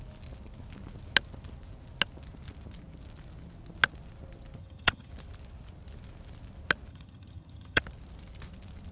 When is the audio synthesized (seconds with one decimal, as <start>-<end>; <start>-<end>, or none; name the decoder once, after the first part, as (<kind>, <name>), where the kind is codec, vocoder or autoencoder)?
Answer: 4.6-5.1 (vocoder, HiFi-GAN); 6.9-7.8